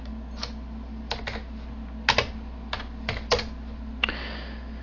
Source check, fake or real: real